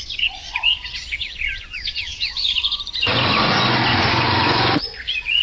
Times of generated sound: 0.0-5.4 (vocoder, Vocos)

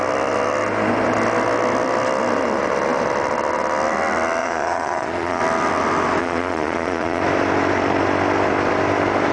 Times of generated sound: 4.4-5.4 (vocoder, Vocos); 6.2-7.2

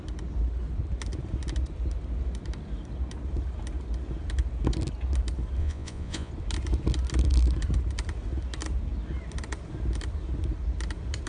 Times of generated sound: 5.6-6.3 (vocoder, Vocos)

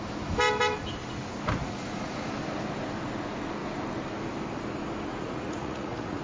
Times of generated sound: 1.6-2.3 (vocoder, Vocos); 5.1-6.2